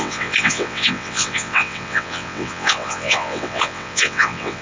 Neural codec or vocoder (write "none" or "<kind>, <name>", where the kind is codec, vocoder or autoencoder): vocoder, WaveNeXt